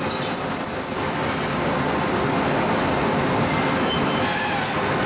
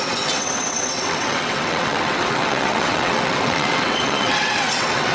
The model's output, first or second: second